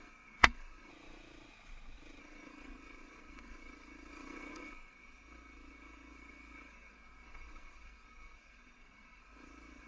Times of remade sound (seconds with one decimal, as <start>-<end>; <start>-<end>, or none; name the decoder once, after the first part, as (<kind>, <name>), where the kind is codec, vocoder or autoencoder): 0.0-0.9 (codec, SNAC); 2.2-9.9

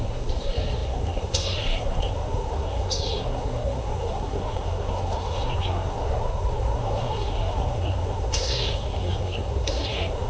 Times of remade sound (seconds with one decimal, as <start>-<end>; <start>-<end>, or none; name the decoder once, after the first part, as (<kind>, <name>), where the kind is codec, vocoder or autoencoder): 0.0-10.3 (codec, SNAC)

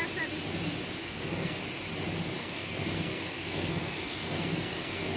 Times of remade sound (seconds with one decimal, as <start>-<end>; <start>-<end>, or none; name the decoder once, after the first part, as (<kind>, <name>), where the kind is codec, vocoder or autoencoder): 1.0-1.6 (codec, SNAC); 2.4-5.2